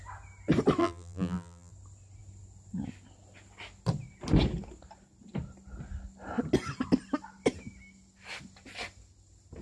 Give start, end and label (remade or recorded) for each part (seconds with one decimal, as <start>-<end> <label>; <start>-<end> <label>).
0.0-0.8 recorded; 0.8-1.7 remade; 1.7-9.6 recorded